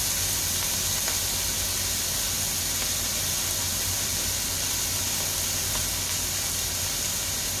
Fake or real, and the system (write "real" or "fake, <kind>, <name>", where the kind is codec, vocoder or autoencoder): real